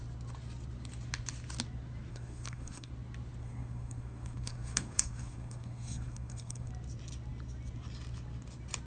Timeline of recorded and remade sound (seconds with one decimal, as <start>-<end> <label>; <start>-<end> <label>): 0.0-2.1 recorded; 2.1-2.9 remade; 2.9-3.4 recorded; 3.4-6.7 remade; 6.7-8.9 recorded